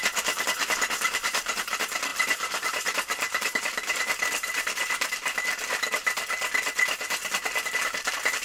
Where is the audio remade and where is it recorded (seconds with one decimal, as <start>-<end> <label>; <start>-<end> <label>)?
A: 0.0-6.0 remade; 6.0-7.6 recorded; 7.6-8.4 remade